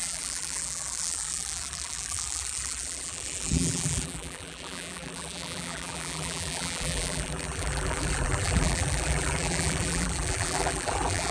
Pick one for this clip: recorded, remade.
remade